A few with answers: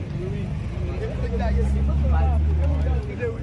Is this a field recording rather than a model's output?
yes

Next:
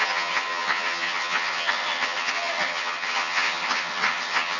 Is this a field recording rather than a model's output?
no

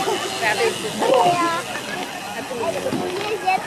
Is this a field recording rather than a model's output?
yes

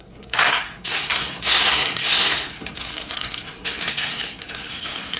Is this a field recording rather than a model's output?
no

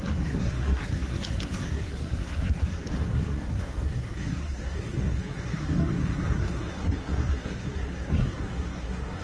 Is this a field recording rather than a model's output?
no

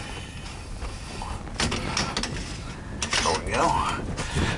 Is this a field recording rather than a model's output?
yes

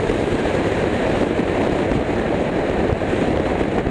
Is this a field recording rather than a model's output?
no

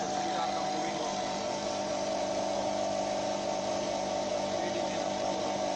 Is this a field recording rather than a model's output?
no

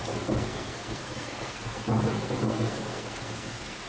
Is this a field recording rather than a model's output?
no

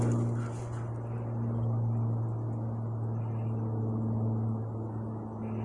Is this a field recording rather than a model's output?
yes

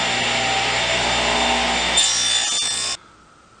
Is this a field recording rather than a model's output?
yes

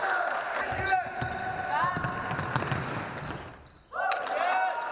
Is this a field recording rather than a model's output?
yes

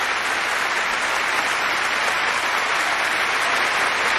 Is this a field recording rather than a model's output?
yes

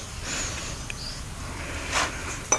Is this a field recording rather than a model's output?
yes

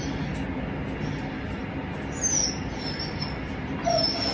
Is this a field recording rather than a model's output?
yes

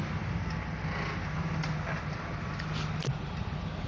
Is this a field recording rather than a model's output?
yes